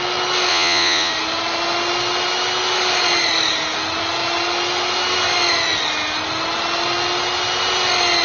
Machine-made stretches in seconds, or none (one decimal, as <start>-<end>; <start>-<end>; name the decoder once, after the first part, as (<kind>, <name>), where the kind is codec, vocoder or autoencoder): 0.5-1.1 (vocoder, Vocos)